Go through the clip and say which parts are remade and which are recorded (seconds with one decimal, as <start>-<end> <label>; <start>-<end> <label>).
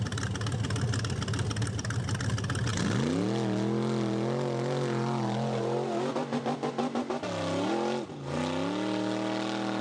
0.0-9.8 recorded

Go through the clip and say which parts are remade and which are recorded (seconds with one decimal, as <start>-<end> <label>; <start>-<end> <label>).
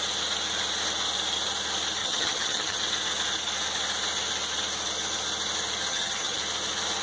0.0-2.0 recorded; 2.0-2.8 remade; 2.8-5.9 recorded; 5.9-6.4 remade; 6.4-7.0 recorded